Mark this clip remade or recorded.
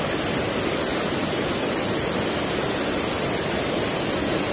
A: recorded